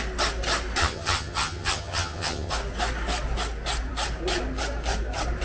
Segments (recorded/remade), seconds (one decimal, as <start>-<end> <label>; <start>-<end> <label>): 0.0-0.8 recorded; 0.8-2.5 remade; 2.5-5.4 recorded